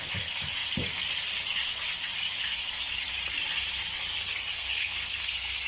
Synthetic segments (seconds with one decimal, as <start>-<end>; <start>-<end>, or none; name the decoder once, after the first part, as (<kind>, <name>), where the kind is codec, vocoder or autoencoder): 4.5-5.7 (codec, SNAC)